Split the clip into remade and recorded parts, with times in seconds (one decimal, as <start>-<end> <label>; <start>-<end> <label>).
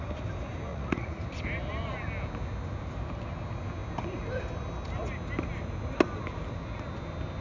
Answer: 0.0-0.7 recorded; 0.7-1.2 remade; 1.2-7.4 recorded